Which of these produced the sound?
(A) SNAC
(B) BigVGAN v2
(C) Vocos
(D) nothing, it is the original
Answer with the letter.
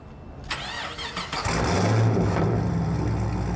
D